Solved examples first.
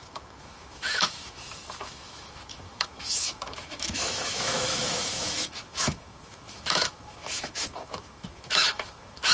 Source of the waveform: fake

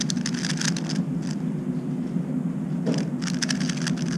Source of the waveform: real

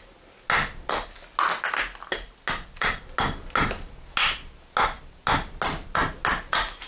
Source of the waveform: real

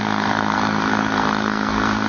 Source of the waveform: fake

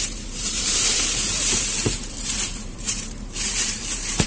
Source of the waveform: fake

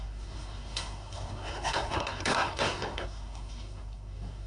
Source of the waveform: fake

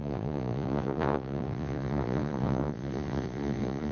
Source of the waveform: fake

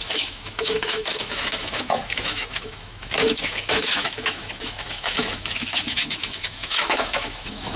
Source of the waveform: fake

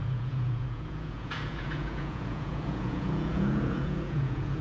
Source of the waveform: fake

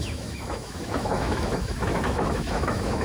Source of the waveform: fake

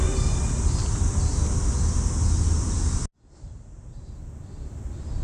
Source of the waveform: real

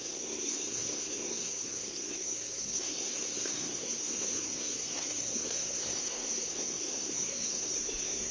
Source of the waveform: fake